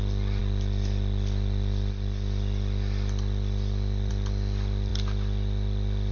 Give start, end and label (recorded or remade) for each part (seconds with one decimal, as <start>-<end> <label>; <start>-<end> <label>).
0.0-6.1 recorded